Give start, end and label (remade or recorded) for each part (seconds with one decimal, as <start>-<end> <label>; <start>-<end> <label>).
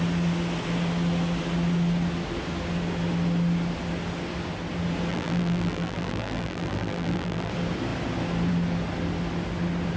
0.0-5.1 recorded; 5.1-7.5 remade; 7.5-10.0 recorded